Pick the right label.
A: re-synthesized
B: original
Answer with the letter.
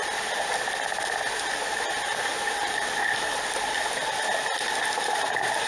B